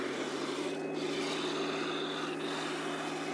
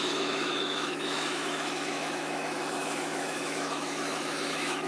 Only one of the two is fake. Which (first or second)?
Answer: second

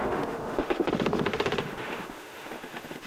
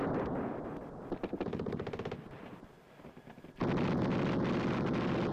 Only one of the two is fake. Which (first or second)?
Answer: first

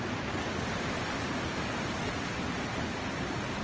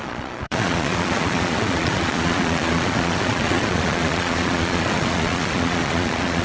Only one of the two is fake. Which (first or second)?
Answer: second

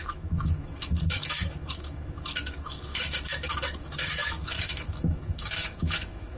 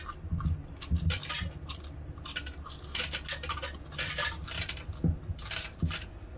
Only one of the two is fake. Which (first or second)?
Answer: first